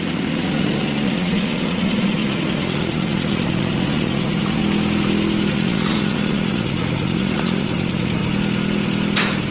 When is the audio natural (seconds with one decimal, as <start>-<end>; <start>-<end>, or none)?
4.6-5.5; 8.2-9.5